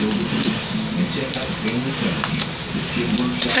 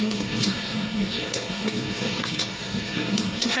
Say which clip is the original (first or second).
first